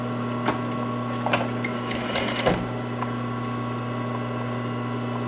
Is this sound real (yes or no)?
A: yes